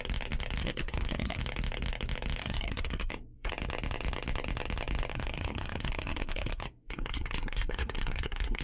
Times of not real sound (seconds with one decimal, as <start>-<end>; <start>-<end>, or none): 0.6-1.4; 2.4-3.5; 5.1-8.6